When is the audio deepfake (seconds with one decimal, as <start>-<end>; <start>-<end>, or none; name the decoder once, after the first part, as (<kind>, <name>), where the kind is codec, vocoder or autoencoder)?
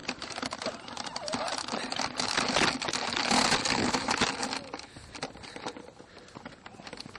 none